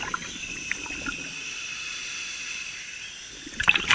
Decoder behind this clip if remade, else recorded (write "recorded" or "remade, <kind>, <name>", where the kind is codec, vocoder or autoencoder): recorded